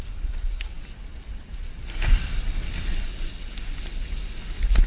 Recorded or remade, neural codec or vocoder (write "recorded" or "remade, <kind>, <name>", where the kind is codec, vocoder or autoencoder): recorded